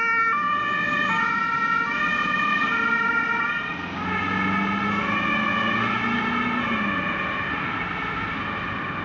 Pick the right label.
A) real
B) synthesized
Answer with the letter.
A